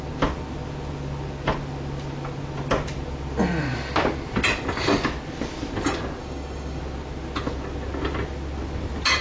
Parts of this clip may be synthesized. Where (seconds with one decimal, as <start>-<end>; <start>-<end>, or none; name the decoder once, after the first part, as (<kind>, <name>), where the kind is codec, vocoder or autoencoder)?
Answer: 6.2-6.8 (codec, DAC)

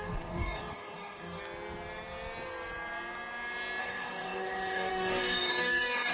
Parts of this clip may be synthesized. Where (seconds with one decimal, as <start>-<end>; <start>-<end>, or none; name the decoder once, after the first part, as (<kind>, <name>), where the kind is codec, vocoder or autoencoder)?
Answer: 0.0-1.4 (codec, DAC); 3.8-6.1

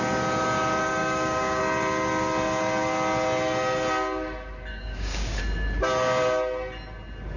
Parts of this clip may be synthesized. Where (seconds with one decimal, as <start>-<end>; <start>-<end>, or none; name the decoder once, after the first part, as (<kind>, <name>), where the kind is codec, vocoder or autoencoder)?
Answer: 1.0-1.6 (codec, DAC); 4.7-5.4